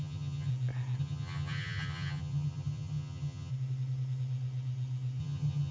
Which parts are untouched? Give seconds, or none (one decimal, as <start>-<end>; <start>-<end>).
0.5-1.0; 3.5-5.2